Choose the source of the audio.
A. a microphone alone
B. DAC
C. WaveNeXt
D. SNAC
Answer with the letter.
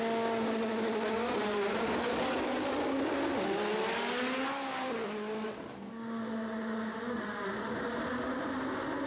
A